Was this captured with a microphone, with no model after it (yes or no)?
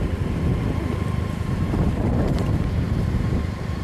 no